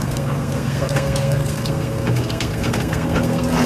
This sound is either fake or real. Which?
fake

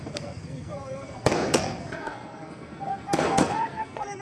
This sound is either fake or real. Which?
fake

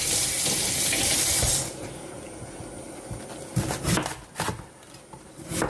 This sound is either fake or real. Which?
real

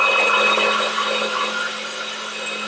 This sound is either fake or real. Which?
real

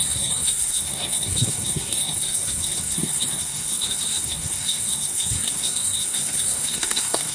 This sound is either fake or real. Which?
fake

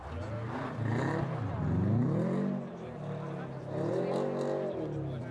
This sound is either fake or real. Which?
real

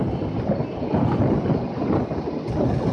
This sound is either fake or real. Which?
real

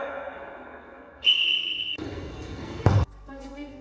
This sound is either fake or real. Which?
fake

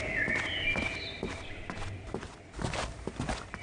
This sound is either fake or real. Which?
real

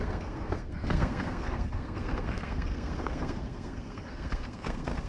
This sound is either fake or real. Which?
fake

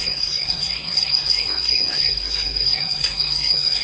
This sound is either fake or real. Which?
fake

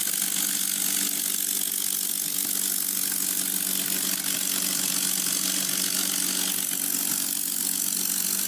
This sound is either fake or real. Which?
real